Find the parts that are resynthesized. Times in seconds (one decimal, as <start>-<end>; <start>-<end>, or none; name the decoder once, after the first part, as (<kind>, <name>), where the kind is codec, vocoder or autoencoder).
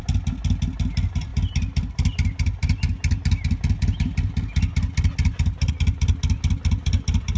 none